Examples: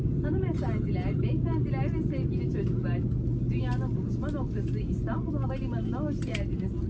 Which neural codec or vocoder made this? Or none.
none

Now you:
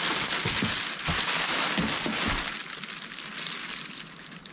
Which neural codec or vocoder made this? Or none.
none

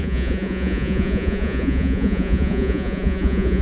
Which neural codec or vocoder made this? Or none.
vocoder, Vocos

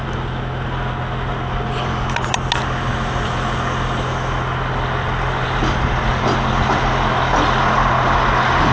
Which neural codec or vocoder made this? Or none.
none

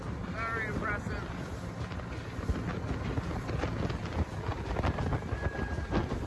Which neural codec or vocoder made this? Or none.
none